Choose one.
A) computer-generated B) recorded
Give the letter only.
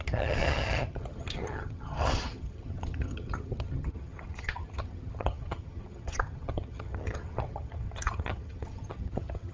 A